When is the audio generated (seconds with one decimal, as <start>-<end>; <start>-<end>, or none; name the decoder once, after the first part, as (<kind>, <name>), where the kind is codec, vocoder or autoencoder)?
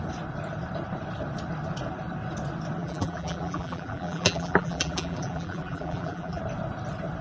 2.8-6.4 (vocoder, BigVGAN v2)